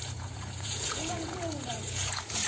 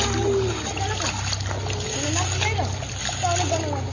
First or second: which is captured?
second